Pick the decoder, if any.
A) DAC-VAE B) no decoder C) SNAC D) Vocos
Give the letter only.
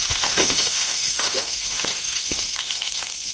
A